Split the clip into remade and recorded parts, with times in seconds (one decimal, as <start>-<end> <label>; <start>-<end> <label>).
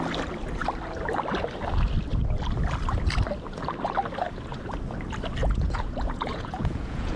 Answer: 0.0-5.4 recorded; 5.4-7.2 remade